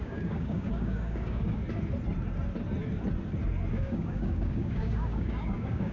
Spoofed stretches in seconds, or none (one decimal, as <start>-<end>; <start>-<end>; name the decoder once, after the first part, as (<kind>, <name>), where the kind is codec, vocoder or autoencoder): 0.0-1.6 (codec, DAC); 3.7-5.9